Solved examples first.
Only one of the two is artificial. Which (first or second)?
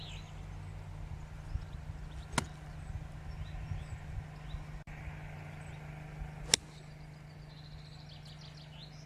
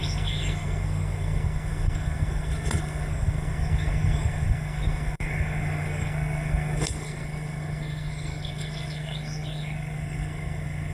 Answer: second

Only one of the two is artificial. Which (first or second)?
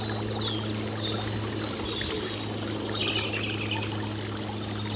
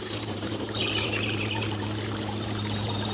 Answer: second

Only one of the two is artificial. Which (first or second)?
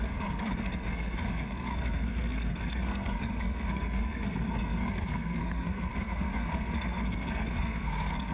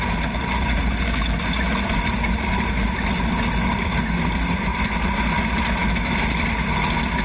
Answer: first